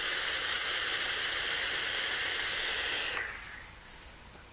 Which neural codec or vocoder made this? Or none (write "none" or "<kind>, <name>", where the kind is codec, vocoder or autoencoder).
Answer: none